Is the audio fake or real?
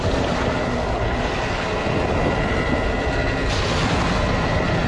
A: real